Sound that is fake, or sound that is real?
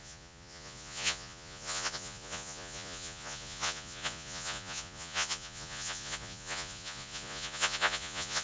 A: fake